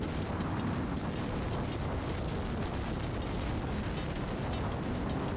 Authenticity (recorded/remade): recorded